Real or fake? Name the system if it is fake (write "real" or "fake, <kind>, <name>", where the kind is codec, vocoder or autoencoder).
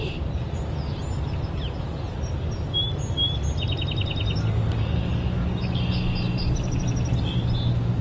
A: real